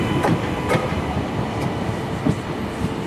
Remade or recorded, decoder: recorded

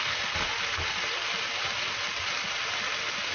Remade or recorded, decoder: recorded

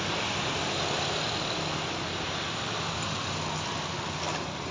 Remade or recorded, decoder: recorded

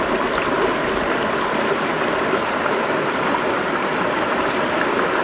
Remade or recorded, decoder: recorded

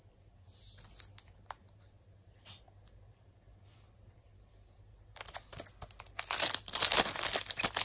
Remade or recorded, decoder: recorded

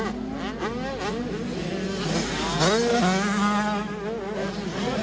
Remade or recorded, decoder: recorded